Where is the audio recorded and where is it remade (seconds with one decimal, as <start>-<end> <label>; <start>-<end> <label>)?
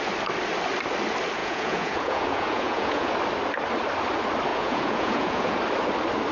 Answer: 0.0-1.4 recorded; 1.4-3.1 remade; 3.1-4.5 recorded; 4.5-5.6 remade; 5.6-6.3 recorded